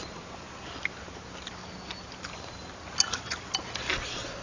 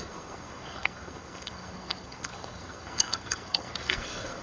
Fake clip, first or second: second